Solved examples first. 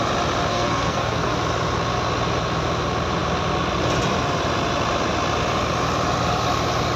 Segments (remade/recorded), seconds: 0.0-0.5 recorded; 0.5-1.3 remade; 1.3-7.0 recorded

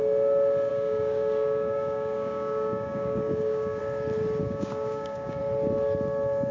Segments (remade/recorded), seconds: 0.0-0.7 recorded; 0.7-3.8 remade; 3.8-4.4 recorded; 4.4-5.4 remade; 5.4-6.5 recorded